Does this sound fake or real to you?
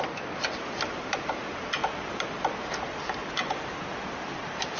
fake